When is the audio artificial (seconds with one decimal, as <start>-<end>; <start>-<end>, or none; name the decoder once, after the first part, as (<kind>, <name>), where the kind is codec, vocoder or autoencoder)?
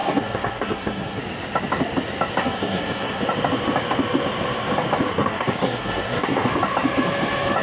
0.0-1.2 (codec, SNAC); 2.4-3.2; 5.1-6.5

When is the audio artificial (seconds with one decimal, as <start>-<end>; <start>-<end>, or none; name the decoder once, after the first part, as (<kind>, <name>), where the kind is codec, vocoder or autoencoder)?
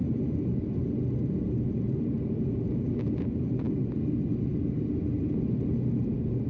0.0-3.9 (vocoder, BigVGAN v2); 4.5-6.5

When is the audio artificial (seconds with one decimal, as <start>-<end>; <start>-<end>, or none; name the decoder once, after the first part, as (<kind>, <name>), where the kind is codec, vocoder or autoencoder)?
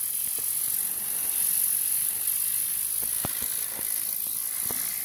none